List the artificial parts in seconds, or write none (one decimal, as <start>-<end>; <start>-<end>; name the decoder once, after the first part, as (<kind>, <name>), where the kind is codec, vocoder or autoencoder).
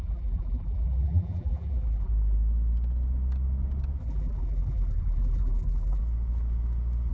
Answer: 0.0-2.1 (vocoder, BigVGAN v2); 4.0-6.0